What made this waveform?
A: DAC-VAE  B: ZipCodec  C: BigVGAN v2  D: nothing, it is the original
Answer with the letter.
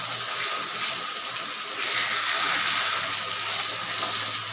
D